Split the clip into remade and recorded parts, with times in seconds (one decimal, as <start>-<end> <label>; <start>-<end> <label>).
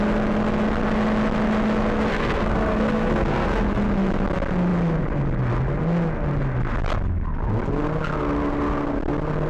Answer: 0.0-2.1 recorded; 2.1-3.6 remade; 3.6-9.5 recorded